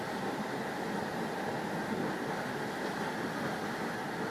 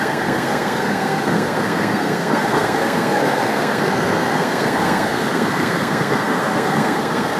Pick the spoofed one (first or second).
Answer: second